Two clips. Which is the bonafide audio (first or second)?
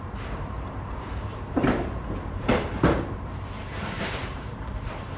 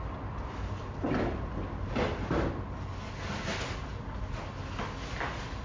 second